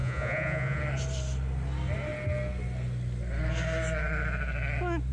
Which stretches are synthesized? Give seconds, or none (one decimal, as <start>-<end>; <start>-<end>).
0.0-0.8